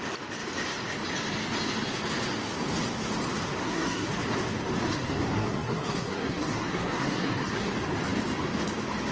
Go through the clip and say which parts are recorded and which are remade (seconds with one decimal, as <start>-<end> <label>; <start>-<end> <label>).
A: 0.0-3.6 recorded; 3.6-4.1 remade; 4.1-4.9 recorded; 4.9-7.7 remade; 7.7-9.1 recorded